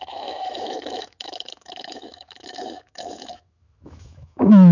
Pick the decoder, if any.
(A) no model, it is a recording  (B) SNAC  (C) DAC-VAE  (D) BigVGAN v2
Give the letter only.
C